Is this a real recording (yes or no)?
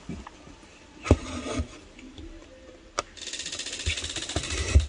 yes